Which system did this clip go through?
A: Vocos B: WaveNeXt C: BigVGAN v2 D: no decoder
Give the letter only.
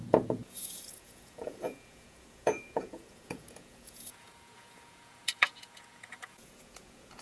A